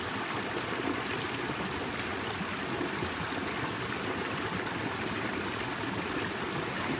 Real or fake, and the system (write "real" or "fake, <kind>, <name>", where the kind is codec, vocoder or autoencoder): real